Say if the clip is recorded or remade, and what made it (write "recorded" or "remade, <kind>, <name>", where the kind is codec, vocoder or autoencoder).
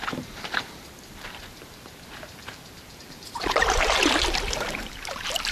remade, vocoder, BigVGAN v2